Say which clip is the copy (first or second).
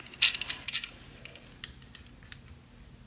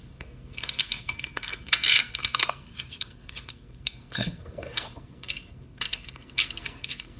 second